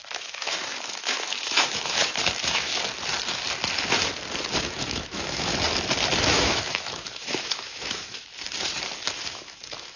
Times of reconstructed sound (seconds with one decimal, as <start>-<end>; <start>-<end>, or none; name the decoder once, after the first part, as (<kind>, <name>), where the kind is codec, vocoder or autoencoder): 0.0-2.7 (autoencoder, DAC-VAE); 4.6-5.5; 6.2-8.3; 9.3-10.0